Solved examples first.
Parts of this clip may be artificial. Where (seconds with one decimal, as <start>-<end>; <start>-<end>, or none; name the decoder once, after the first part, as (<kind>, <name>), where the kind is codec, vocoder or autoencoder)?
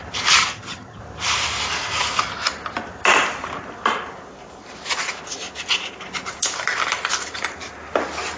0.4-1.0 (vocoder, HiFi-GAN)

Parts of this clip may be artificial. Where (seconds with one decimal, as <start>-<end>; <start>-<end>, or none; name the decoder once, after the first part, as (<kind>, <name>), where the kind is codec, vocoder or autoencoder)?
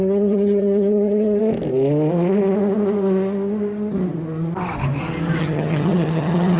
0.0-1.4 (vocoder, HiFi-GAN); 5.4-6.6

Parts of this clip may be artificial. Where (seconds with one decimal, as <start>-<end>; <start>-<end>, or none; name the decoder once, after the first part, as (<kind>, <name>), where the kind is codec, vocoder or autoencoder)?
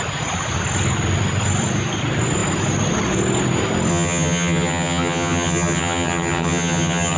3.9-7.2 (vocoder, HiFi-GAN)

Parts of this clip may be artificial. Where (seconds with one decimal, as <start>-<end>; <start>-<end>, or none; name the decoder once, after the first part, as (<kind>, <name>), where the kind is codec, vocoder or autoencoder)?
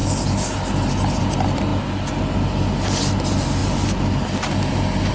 none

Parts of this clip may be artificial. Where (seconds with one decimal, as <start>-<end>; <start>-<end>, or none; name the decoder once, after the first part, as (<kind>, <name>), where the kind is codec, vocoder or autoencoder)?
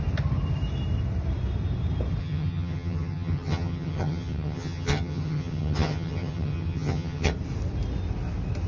2.2-7.3 (vocoder, HiFi-GAN)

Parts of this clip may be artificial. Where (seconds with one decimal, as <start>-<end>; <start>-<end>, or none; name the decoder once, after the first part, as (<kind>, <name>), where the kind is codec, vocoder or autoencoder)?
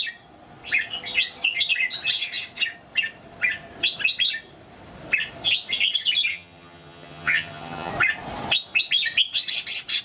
6.3-7.9 (vocoder, HiFi-GAN)